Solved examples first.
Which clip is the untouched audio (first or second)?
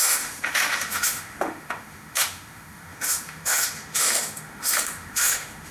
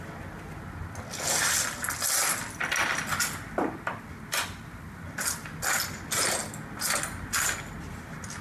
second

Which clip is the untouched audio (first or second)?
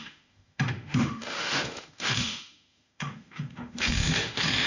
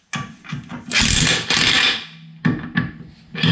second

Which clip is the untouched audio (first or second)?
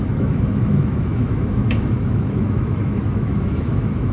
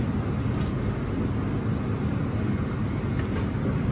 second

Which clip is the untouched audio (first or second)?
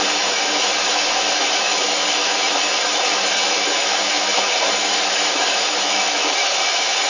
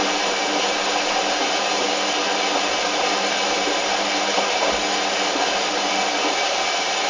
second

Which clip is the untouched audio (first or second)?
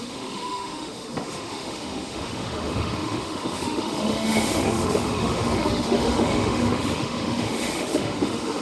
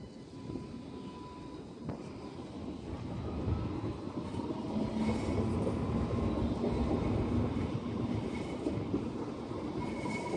second